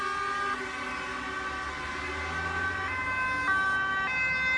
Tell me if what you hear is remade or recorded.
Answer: recorded